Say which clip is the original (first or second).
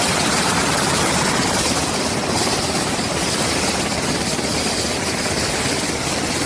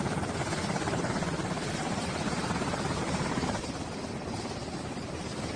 second